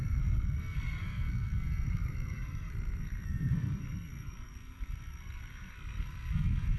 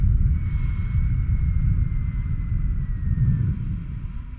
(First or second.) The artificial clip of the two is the first